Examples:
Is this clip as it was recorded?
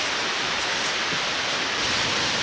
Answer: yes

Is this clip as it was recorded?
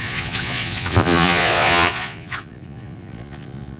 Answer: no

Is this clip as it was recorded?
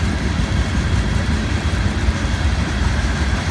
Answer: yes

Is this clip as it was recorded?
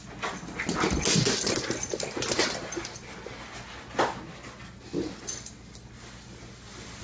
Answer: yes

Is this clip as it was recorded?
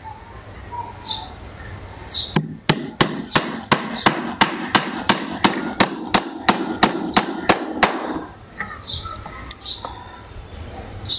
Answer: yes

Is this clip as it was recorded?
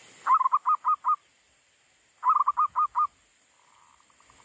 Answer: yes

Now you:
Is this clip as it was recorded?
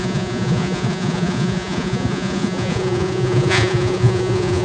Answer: no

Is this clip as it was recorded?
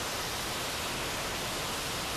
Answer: yes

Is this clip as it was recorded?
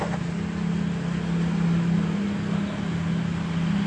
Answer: yes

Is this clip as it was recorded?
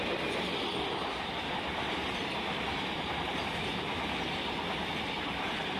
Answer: yes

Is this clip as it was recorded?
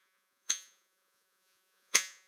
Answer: no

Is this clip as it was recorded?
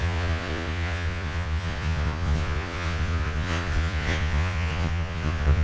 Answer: no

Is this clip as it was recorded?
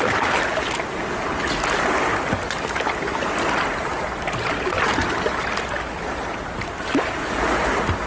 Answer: yes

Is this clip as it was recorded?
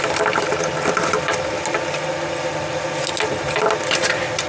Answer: yes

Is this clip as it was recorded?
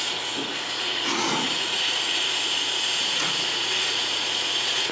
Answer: no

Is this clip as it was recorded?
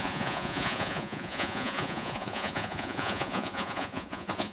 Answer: no